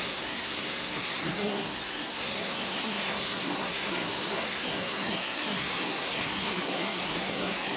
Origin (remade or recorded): remade